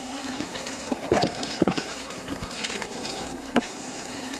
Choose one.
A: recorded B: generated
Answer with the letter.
B